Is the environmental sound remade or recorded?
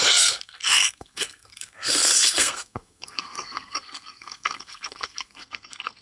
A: remade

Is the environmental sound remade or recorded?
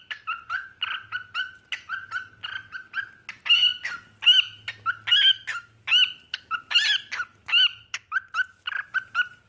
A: recorded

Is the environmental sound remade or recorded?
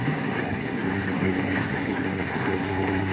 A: remade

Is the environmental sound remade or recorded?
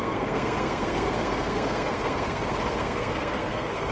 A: remade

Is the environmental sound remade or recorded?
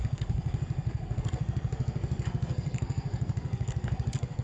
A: remade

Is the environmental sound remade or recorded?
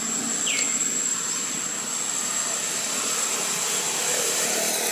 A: recorded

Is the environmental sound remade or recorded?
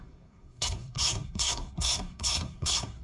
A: remade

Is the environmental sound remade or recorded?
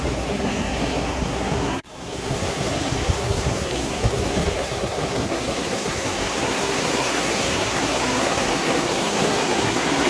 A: remade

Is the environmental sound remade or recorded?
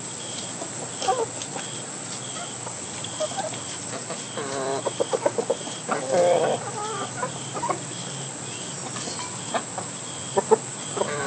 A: recorded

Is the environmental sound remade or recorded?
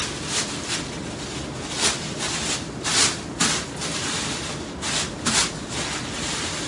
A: recorded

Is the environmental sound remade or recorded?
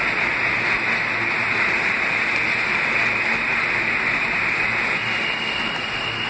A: recorded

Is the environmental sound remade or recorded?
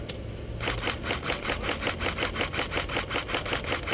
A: recorded